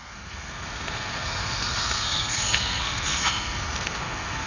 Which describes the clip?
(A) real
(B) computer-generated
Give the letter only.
B